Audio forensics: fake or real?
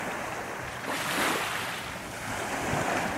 real